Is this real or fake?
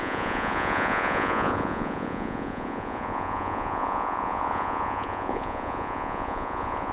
fake